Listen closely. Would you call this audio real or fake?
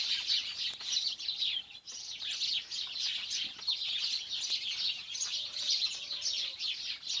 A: real